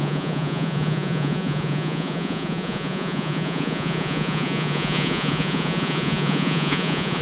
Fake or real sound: fake